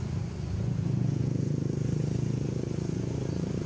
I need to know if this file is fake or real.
fake